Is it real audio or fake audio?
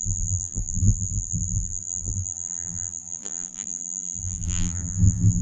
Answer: fake